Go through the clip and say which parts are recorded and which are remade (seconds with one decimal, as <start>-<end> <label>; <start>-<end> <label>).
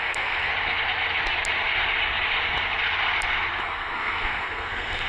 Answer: 0.0-0.5 remade; 0.5-3.6 recorded; 3.6-5.1 remade